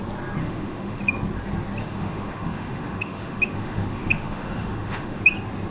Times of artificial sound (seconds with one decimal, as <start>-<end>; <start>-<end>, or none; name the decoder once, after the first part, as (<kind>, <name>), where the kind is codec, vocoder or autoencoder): 0.4-1.0 (autoencoder, DAC-VAE); 1.8-5.2